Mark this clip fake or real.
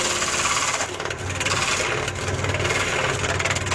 real